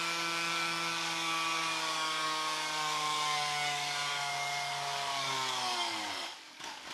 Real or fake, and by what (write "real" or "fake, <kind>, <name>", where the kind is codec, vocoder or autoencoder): fake, codec, DAC